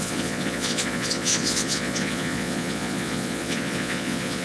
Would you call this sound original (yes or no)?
no